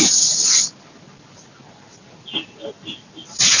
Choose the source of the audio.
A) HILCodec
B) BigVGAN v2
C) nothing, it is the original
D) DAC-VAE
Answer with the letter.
C